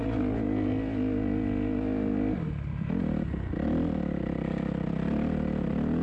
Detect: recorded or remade recorded